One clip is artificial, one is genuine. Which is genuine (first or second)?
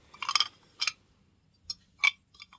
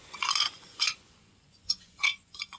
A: first